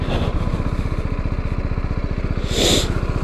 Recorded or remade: recorded